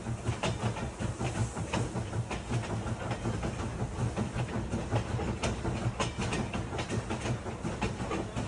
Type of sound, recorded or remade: recorded